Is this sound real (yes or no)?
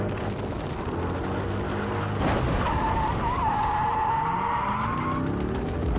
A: yes